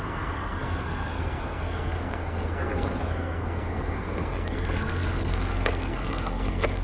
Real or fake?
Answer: fake